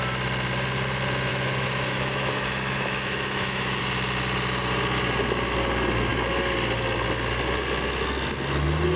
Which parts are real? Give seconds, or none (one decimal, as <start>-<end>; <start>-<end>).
0.0-1.3; 3.8-9.0